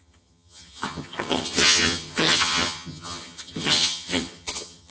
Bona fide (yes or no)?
no